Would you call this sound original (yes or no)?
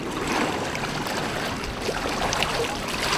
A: yes